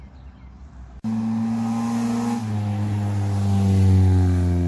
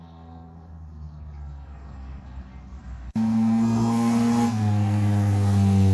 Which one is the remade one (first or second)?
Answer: second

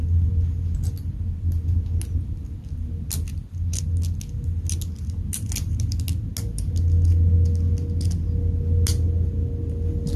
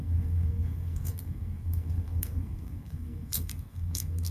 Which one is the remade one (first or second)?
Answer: second